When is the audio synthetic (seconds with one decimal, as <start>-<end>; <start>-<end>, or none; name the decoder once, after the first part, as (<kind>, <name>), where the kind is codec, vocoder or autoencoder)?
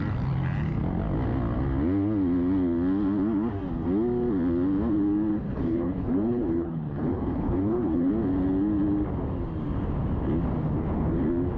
5.3-8.1 (codec, HILCodec)